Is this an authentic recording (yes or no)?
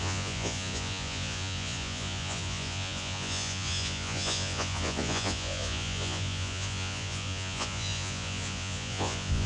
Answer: no